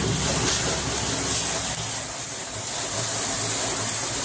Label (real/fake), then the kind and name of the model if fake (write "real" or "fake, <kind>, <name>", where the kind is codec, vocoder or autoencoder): real